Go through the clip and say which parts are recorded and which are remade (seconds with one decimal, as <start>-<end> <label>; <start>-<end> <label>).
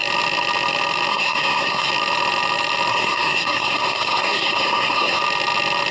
0.0-1.1 recorded; 1.1-1.9 remade; 1.9-2.9 recorded; 2.9-5.2 remade; 5.2-5.9 recorded